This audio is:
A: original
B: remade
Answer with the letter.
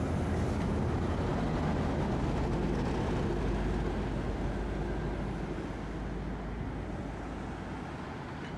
A